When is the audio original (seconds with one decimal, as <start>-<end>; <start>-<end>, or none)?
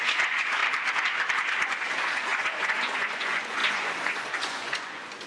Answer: 0.6-1.6